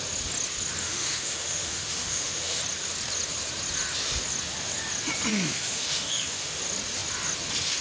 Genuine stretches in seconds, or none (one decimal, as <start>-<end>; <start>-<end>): 0.0-0.8; 2.6-5.3; 6.6-7.8